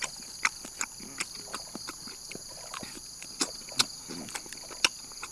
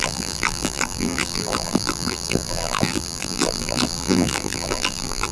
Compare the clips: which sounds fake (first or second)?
second